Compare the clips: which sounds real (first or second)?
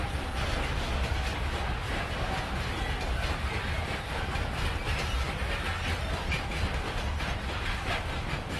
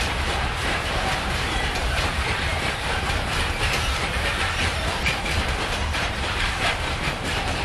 first